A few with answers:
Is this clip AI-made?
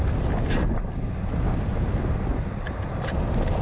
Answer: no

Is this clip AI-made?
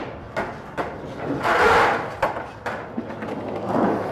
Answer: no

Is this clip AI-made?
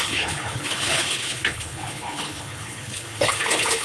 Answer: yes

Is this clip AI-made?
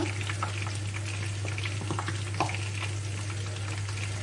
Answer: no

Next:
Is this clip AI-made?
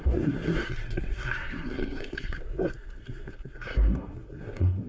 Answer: yes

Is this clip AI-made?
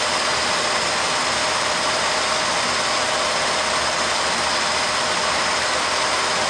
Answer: no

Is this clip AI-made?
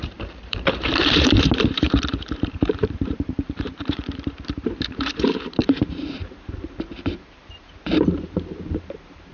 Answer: yes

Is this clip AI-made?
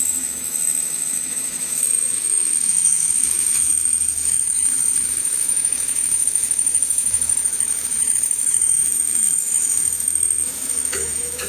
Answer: yes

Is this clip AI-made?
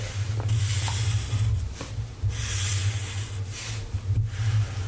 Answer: no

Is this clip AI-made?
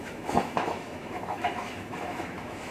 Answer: yes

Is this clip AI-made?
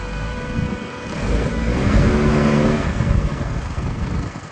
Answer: yes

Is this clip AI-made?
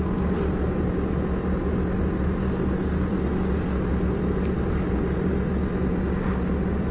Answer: no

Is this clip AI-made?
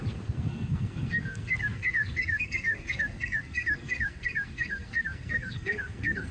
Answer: yes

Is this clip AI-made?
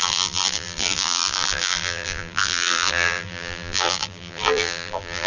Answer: yes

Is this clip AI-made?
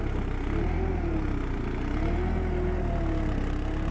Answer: no